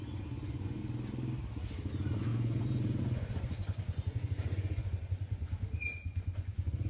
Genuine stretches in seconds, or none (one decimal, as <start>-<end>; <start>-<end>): 0.8-1.9